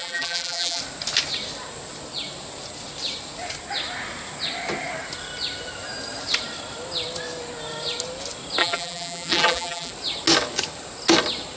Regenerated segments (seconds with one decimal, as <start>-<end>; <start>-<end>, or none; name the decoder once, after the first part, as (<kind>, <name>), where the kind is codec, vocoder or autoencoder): 0.0-0.8 (vocoder, BigVGAN v2); 8.6-9.9